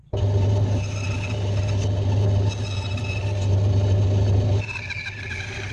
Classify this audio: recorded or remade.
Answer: recorded